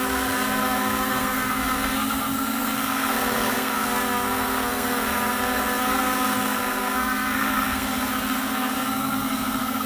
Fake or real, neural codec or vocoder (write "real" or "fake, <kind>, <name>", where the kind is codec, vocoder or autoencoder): fake, codec, SNAC